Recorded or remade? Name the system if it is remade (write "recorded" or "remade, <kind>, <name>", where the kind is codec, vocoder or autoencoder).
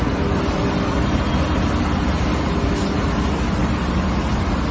recorded